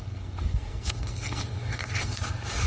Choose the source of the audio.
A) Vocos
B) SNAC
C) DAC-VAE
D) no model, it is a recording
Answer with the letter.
B